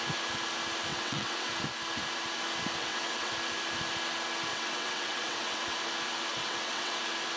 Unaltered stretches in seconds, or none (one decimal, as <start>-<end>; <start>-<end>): 0.0-0.9; 1.5-2.8; 3.3-4.5; 5.6-6.3; 7.0-7.4